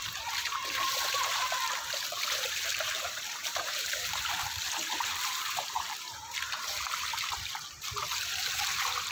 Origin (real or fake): fake